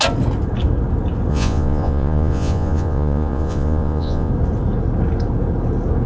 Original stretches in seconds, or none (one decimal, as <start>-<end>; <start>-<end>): 0.0-1.3; 4.3-6.1